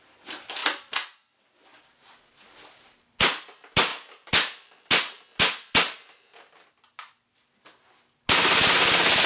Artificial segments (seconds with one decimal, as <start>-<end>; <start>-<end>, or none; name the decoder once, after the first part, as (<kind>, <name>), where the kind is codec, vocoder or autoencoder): none